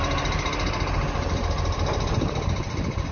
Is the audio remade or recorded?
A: recorded